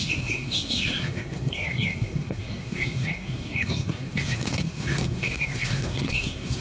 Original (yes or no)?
no